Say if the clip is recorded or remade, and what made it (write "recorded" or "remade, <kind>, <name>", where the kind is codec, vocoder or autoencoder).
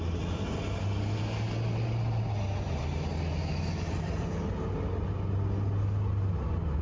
recorded